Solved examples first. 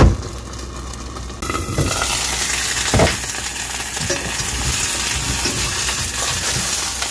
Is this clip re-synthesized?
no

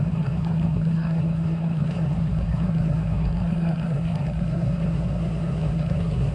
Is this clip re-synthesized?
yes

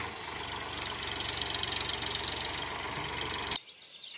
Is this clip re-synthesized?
no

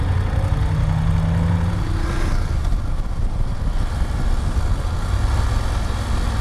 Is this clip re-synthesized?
no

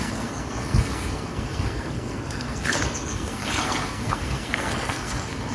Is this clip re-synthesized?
yes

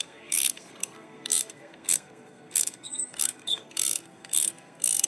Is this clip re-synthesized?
yes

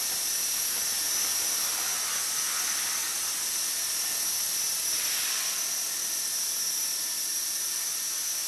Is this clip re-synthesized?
no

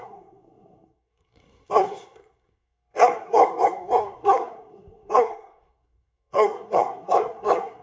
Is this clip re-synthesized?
yes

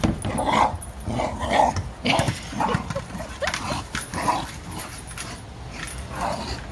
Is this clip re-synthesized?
no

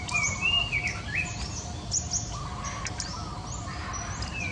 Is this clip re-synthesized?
no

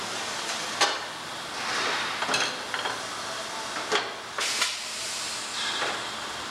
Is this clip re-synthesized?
no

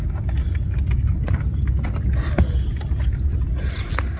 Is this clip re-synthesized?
no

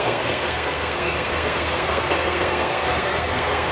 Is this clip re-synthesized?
yes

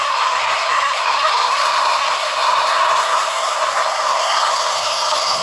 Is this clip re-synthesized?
yes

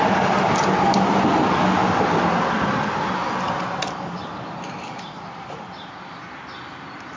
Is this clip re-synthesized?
no